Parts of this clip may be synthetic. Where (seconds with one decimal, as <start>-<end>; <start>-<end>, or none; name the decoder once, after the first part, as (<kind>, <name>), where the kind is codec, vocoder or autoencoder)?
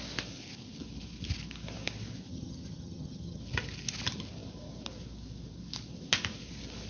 2.3-3.4 (vocoder, HiFi-GAN)